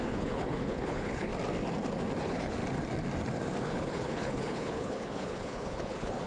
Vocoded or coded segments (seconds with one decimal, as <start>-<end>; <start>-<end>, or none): 0.0-1.3; 2.2-2.6; 3.6-6.3